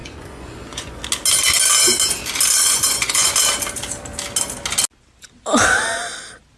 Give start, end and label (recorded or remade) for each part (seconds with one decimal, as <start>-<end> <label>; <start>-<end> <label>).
0.0-1.0 remade; 1.0-2.6 recorded; 2.6-3.3 remade; 3.3-6.6 recorded